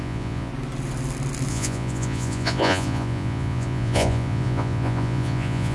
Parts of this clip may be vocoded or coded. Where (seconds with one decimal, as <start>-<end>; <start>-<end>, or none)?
0.0-0.5; 1.5-5.7